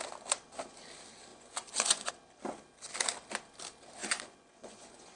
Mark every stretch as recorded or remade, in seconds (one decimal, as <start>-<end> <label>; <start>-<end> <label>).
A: 0.0-1.3 recorded; 1.3-2.1 remade; 2.1-4.0 recorded; 4.0-5.2 remade